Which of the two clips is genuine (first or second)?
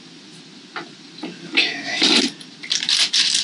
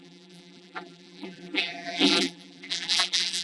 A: first